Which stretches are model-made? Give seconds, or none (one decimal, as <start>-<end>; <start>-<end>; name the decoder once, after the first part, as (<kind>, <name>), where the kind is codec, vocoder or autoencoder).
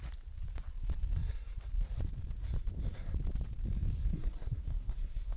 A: 4.1-5.4 (codec, SNAC)